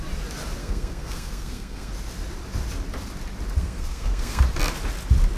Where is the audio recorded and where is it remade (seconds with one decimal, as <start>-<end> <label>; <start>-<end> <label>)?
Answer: 0.0-0.6 recorded; 0.6-1.9 remade; 1.9-3.6 recorded; 3.6-4.4 remade; 4.4-5.4 recorded

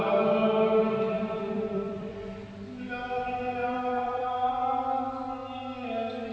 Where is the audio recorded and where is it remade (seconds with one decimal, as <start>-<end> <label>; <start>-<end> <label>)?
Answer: 0.0-1.4 recorded; 1.4-2.2 remade; 2.2-3.6 recorded; 3.6-4.5 remade; 4.5-6.3 recorded

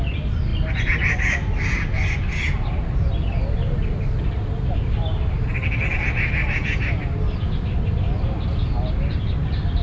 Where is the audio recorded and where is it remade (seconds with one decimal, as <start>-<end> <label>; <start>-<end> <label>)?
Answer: 0.0-9.8 recorded

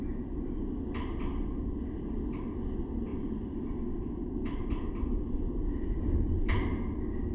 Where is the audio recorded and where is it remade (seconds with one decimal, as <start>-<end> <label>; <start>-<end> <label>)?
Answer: 0.0-3.1 recorded; 3.1-4.9 remade; 4.9-5.6 recorded; 5.6-6.2 remade; 6.2-7.3 recorded

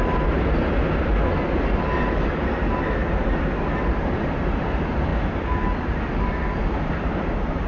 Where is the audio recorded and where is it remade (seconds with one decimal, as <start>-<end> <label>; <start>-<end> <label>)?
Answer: 0.0-1.1 remade; 1.1-4.0 recorded; 4.0-5.1 remade; 5.1-6.9 recorded; 6.9-7.7 remade

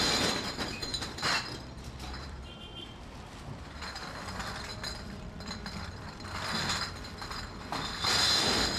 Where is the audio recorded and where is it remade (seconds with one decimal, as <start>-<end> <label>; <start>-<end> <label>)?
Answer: 0.0-0.9 recorded; 0.9-2.6 remade; 2.6-4.7 recorded; 4.7-6.8 remade; 6.8-8.8 recorded

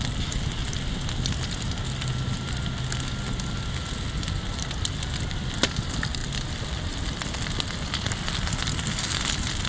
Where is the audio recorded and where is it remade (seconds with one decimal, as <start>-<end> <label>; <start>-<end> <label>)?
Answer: 0.0-0.6 remade; 0.6-4.5 recorded; 4.5-9.7 remade